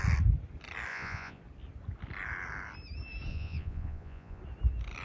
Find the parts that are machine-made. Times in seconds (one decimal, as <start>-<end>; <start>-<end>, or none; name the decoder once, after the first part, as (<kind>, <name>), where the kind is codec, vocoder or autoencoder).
0.9-1.4 (vocoder, Vocos); 3.3-4.4